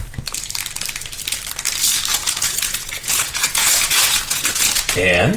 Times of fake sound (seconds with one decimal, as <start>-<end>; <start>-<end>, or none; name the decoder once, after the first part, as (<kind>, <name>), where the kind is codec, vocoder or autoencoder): 2.1-5.4 (vocoder, Vocos)